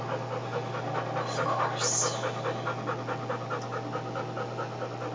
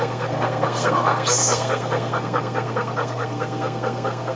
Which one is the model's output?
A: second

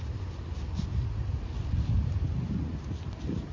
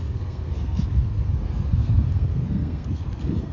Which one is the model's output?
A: second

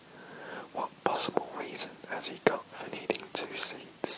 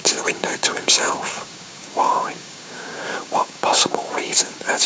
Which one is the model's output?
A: second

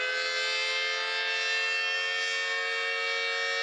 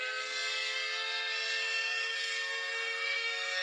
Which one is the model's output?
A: second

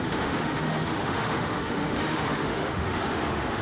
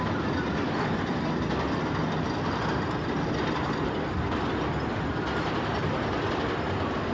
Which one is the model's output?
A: first